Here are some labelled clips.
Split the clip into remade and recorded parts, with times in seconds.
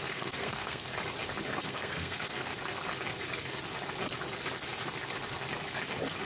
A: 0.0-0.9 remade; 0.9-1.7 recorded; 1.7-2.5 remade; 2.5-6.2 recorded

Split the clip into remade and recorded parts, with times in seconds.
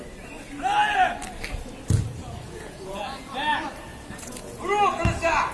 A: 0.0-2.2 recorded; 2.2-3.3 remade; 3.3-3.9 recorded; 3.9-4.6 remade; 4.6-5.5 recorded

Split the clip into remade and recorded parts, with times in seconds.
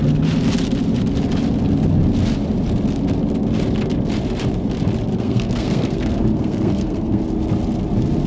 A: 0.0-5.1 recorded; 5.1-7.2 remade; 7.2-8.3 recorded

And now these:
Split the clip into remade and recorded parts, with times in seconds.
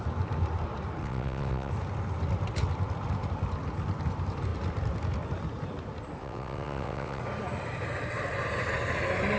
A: 0.0-1.0 recorded; 1.0-1.7 remade; 1.7-6.2 recorded; 6.2-7.2 remade; 7.2-9.4 recorded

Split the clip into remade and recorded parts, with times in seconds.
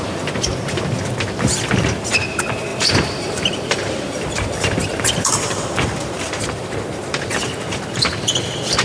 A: 0.0-2.7 recorded; 2.7-6.4 remade; 6.4-8.8 recorded